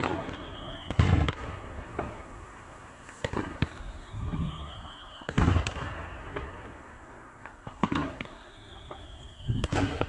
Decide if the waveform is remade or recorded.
remade